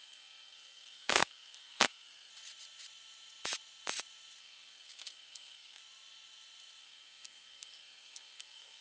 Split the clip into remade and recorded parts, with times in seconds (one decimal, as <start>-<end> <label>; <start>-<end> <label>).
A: 0.0-2.3 remade; 2.3-4.4 recorded; 4.4-5.8 remade; 5.8-6.8 recorded; 6.8-8.8 remade